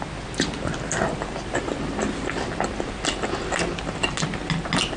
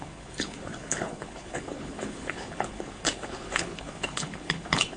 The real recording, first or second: first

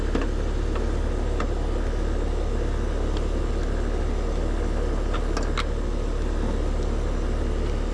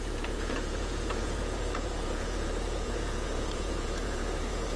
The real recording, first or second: first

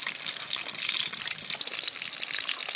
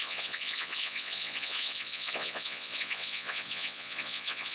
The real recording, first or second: first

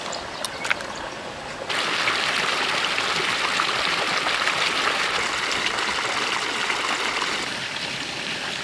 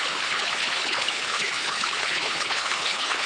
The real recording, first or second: first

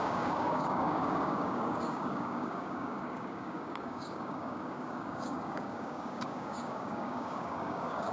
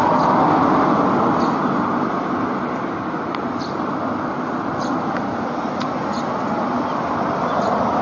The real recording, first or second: second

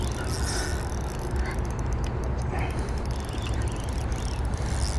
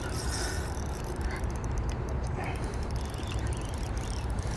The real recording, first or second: first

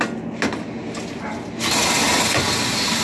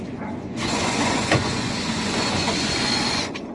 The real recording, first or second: first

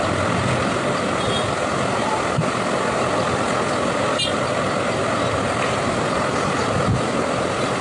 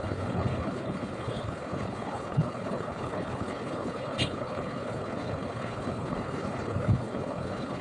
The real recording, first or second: first